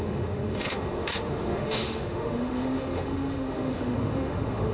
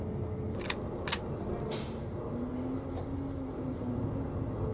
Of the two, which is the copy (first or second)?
first